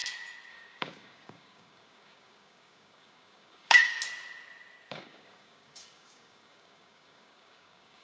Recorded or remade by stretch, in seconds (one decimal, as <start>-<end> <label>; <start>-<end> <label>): 0.0-0.5 recorded; 0.5-3.9 remade; 3.9-4.9 recorded; 4.9-8.0 remade